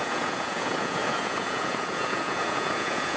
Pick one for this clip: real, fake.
fake